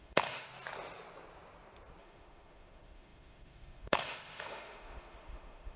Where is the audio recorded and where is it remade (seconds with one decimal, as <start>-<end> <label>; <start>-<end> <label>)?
0.0-0.5 remade; 0.5-2.0 recorded; 2.0-5.8 remade

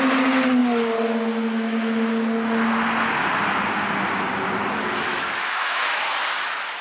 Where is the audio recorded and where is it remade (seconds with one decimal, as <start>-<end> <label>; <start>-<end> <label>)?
0.0-5.1 recorded; 5.1-6.0 remade; 6.0-6.8 recorded

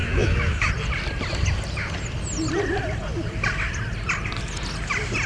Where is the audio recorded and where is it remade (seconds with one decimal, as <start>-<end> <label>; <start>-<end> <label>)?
0.0-0.7 remade; 0.7-5.3 recorded

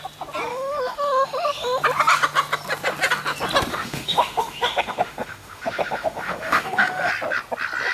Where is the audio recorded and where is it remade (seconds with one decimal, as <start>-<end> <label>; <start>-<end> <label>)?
0.0-0.5 recorded; 0.5-1.8 remade; 1.8-3.7 recorded; 3.7-7.1 remade; 7.1-7.9 recorded

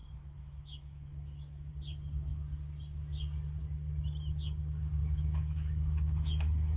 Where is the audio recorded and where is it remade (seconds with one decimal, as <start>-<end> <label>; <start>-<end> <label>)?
0.0-1.7 remade; 1.7-5.0 recorded; 5.0-6.8 remade

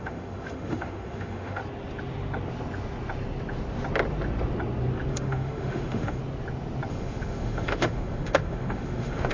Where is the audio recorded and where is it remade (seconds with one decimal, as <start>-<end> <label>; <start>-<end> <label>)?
0.0-1.6 remade; 1.6-5.1 recorded; 5.1-6.2 remade; 6.2-6.9 recorded; 6.9-9.3 remade

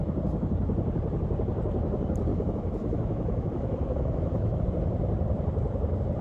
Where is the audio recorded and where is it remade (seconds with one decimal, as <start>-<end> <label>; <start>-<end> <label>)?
0.0-2.3 recorded; 2.3-4.6 remade; 4.6-6.2 recorded

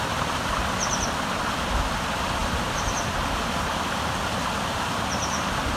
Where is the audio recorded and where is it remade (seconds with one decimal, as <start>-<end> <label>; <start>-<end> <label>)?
0.0-5.8 recorded